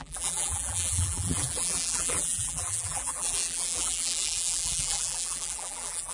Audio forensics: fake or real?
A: fake